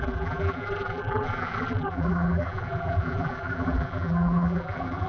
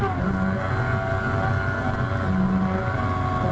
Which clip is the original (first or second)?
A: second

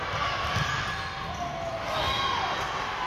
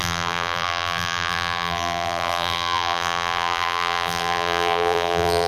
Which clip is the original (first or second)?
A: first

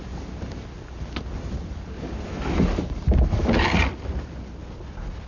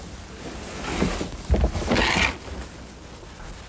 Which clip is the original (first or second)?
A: second